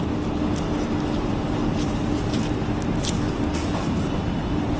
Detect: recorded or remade recorded